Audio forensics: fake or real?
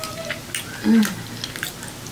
real